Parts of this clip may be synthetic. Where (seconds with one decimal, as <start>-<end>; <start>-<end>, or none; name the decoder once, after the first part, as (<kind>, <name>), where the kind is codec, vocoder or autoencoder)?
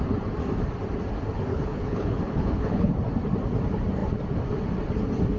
1.5-2.9 (codec, HILCodec)